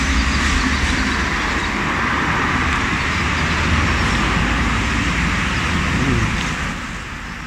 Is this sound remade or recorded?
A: recorded